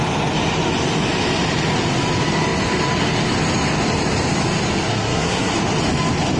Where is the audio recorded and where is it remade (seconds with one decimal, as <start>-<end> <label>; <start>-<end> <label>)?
0.0-4.9 recorded; 4.9-5.5 remade; 5.5-6.4 recorded